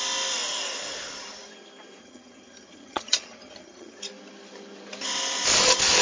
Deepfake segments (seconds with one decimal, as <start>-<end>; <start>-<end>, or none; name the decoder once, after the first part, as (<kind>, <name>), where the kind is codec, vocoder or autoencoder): 2.0-4.0 (vocoder, HiFi-GAN)